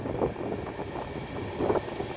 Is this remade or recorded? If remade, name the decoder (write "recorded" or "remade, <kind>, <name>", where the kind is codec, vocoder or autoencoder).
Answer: recorded